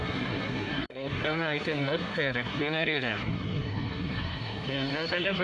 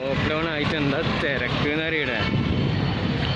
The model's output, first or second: first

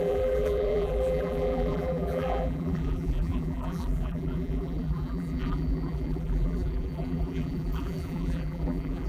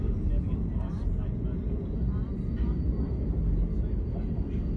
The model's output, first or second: first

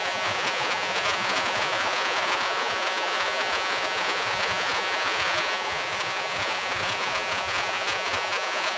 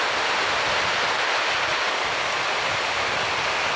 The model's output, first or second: first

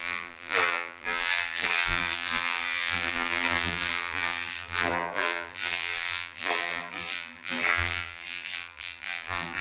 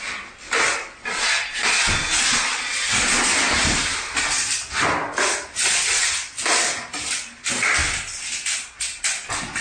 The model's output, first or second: first